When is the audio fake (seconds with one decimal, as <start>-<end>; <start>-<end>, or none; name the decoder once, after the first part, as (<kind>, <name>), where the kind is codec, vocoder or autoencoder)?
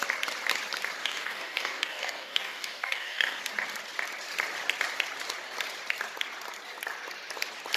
1.0-3.4 (codec, DAC)